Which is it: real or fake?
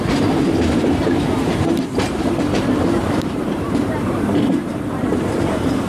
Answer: fake